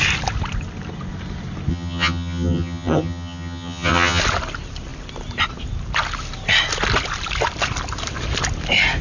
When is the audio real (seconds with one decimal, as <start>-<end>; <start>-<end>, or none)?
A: 0.0-1.7; 4.2-9.0

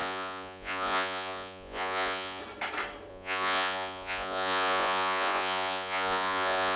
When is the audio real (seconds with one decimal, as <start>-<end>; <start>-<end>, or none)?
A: 2.4-3.1

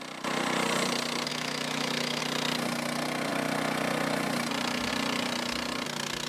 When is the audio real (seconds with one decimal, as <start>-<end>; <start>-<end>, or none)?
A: 0.0-1.3; 2.2-6.3